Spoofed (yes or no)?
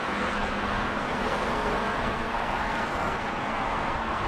yes